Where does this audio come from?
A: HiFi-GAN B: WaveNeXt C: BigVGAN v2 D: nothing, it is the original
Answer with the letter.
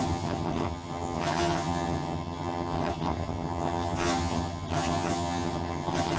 A